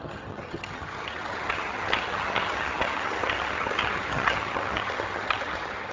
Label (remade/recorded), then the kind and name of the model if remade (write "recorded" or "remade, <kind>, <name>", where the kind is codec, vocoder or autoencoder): remade, vocoder, HiFi-GAN